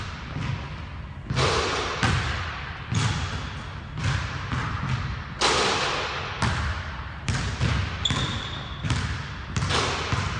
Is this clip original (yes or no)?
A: yes